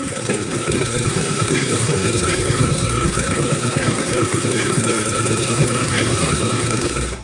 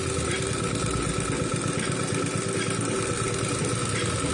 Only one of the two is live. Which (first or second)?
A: second